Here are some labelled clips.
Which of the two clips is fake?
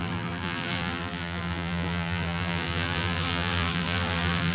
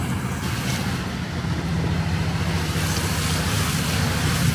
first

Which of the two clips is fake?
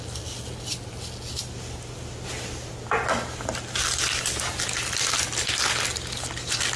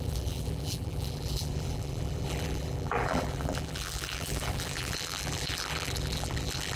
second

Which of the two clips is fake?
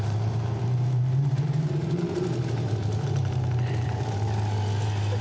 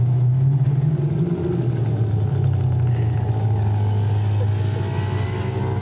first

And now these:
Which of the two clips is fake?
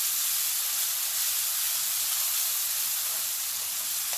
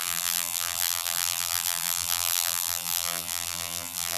second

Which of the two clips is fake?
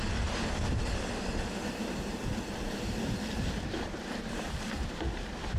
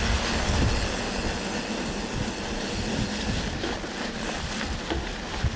first